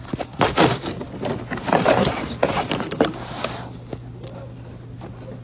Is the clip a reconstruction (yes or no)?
no